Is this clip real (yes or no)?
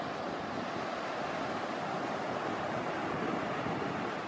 yes